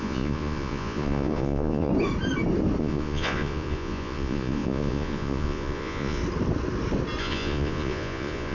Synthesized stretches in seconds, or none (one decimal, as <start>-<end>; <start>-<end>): 0.0-1.9; 2.8-6.2; 7.2-8.5